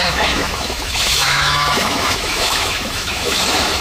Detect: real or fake fake